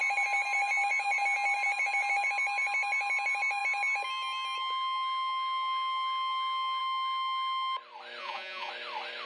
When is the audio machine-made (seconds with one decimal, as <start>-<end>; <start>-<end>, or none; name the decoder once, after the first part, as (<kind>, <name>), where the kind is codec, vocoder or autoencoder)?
8.2-8.7 (vocoder, Vocos)